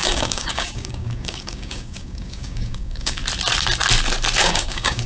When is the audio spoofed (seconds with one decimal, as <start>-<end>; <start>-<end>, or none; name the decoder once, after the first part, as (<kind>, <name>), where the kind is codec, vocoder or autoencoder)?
0.0-3.2 (codec, DAC); 4.4-5.1